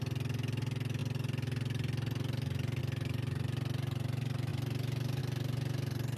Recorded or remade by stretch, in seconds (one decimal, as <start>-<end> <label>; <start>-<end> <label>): 0.0-6.2 recorded